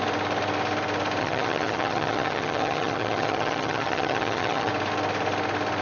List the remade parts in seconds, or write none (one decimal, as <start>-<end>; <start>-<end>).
1.2-4.7